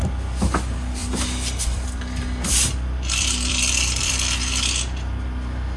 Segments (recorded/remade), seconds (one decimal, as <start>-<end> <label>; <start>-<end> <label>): 0.0-1.0 recorded; 1.0-4.5 remade; 4.5-5.8 recorded